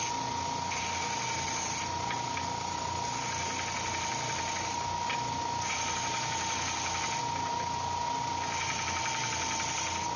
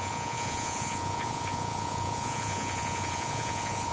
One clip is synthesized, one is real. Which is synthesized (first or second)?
second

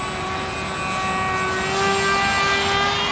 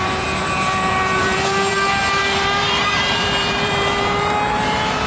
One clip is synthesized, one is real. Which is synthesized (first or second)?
second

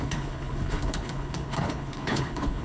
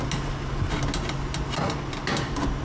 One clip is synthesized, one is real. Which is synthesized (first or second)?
first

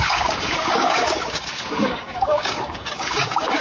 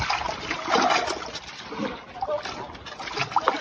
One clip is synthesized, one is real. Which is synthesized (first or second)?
first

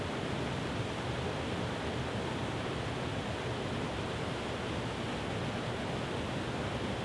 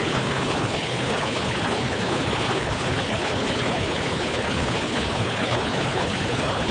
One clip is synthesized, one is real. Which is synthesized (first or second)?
second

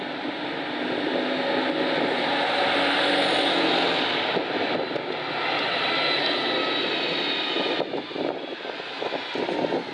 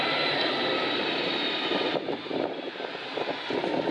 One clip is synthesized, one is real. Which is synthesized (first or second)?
second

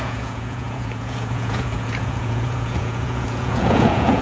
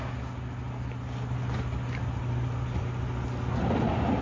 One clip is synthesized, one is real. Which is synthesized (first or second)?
first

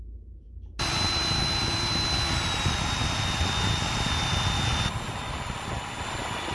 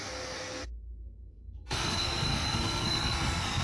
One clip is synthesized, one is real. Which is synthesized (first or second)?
second